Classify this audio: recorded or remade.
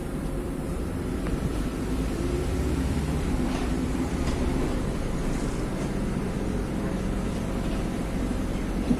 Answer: remade